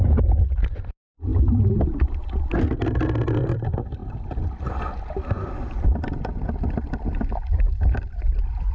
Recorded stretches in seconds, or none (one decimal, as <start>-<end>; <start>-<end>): 0.0-8.7